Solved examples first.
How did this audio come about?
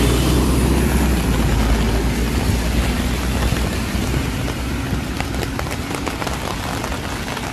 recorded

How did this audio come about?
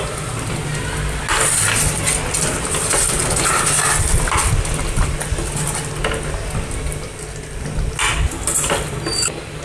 recorded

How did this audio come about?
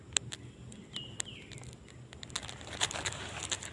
recorded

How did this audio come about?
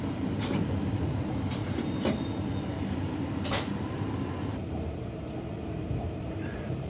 remade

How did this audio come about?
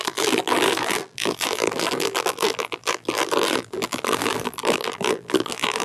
remade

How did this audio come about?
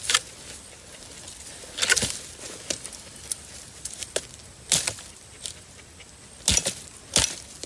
recorded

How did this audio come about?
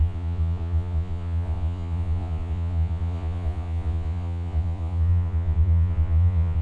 remade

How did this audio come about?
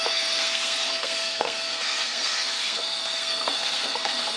remade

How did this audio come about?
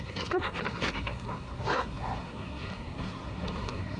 remade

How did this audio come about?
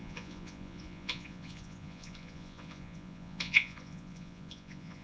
remade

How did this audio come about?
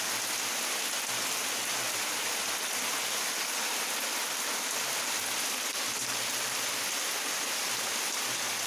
recorded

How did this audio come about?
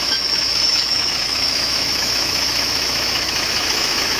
remade